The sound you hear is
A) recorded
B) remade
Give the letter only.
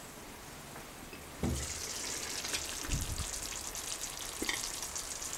A